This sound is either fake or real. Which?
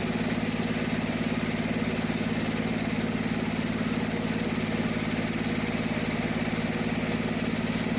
real